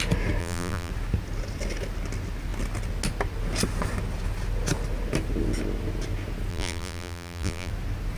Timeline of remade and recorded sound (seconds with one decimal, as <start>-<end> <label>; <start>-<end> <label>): 0.0-0.4 recorded; 0.4-0.9 remade; 0.9-6.5 recorded; 6.5-7.7 remade; 7.7-8.2 recorded